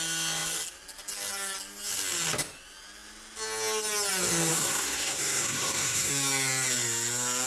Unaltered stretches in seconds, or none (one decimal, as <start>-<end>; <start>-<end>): 0.0-4.5; 6.1-7.5